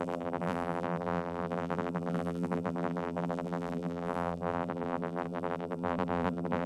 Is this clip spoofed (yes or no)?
yes